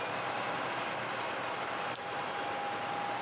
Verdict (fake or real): real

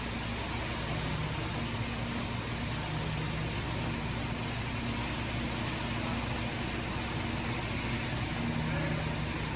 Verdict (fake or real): real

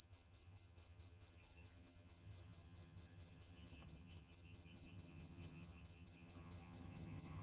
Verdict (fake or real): fake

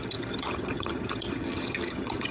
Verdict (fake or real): fake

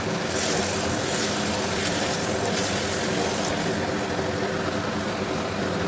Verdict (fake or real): real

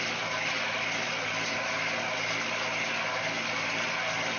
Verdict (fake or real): real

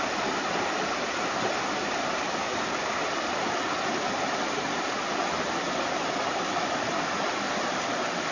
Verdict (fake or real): real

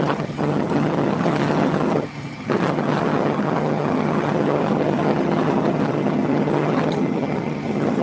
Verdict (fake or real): fake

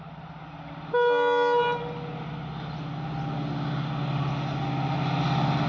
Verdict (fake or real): real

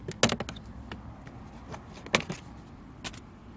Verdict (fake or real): real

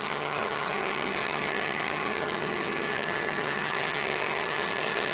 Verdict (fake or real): fake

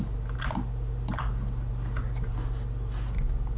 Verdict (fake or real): real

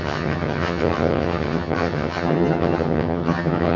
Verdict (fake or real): fake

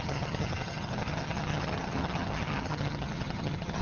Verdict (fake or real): fake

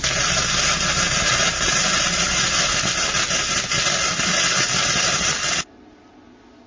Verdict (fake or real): real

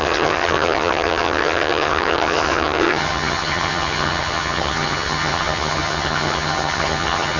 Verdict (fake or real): fake